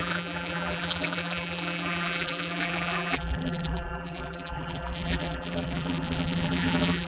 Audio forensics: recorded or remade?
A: remade